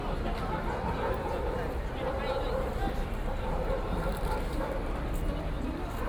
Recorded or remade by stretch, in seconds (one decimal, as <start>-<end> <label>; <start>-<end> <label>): 0.0-2.8 recorded; 2.8-4.6 remade; 4.6-6.1 recorded